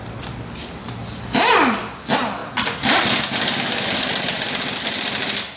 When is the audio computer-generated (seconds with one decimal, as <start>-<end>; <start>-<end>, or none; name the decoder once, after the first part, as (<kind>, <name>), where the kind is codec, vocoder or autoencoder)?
none